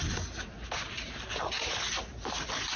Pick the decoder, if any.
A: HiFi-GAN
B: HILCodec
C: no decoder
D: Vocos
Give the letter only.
C